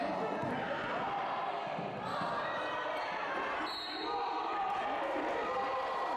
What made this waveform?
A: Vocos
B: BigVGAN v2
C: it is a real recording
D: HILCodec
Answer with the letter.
C